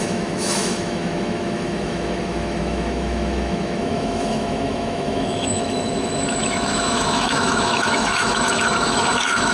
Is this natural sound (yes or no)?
no